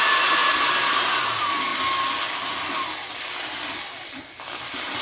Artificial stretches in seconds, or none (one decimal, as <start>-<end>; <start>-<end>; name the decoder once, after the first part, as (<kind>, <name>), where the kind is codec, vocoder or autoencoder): 0.0-0.4 (vocoder, BigVGAN v2); 0.9-1.7; 4.1-5.0

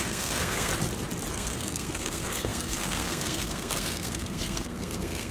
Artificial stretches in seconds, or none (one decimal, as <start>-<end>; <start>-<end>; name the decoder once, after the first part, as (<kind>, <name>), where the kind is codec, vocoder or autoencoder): 0.0-0.7 (codec, SNAC); 1.3-5.3

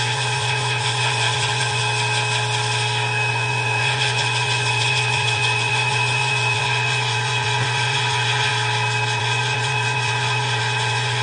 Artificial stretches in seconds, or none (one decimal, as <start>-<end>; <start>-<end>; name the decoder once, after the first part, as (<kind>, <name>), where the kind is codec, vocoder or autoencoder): 0.0-1.8 (vocoder, Vocos); 3.3-8.5; 9.2-11.2

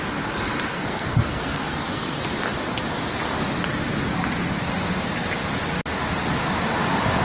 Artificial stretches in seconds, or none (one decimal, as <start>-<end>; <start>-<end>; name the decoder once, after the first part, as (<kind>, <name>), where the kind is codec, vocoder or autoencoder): 0.7-2.2 (codec, SNAC)